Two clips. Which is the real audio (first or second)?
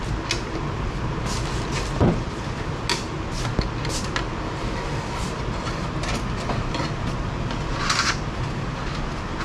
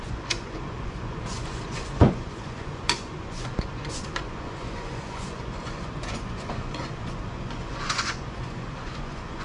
first